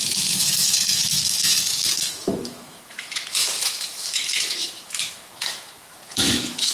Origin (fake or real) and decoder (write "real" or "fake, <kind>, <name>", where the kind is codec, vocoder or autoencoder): fake, autoencoder, DAC-VAE